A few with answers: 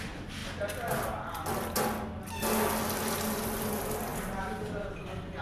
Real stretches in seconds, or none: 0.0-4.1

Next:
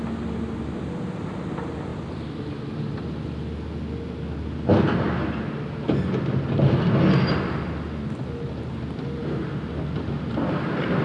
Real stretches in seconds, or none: 0.0-1.9; 3.0-9.2

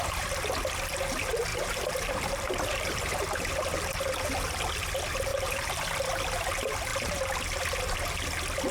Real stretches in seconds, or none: 0.0-1.5; 3.4-5.3; 5.8-8.7

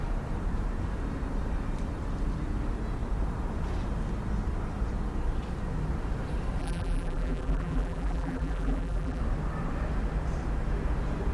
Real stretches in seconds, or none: 0.0-6.6; 9.2-11.3

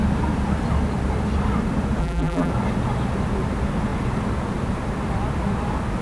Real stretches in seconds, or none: 0.0-2.0; 2.5-6.0

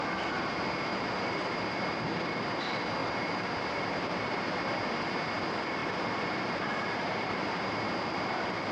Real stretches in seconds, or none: 0.0-0.9; 2.6-3.0; 4.6-5.8; 7.9-8.7